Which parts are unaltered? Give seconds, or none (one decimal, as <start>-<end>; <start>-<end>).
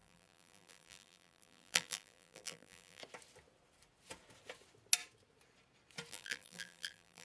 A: 3.0-6.1